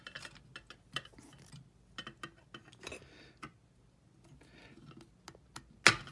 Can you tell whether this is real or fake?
real